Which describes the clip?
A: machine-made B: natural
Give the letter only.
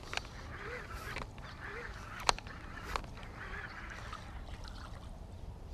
B